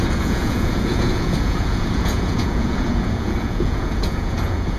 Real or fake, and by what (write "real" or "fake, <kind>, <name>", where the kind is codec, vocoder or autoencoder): fake, vocoder, Vocos